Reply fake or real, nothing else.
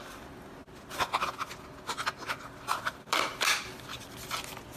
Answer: real